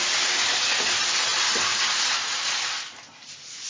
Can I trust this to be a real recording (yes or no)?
yes